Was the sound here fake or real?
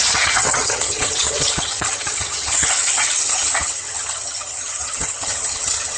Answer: fake